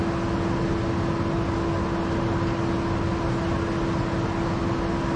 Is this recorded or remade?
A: recorded